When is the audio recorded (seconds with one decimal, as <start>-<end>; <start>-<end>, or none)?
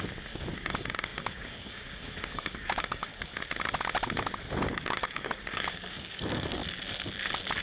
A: 3.1-4.7; 6.6-7.6